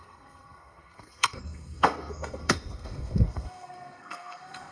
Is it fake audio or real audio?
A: fake